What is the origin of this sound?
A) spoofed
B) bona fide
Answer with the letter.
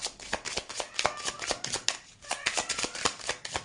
B